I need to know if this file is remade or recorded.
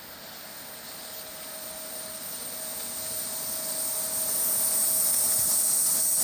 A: recorded